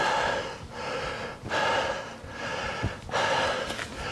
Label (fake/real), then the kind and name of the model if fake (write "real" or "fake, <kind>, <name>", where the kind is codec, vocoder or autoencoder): real